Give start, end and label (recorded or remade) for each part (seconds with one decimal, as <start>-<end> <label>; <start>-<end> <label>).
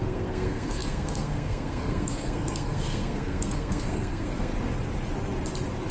0.0-4.5 remade; 4.5-5.9 recorded